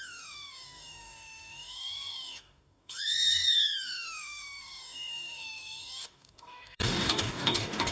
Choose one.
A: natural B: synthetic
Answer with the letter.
B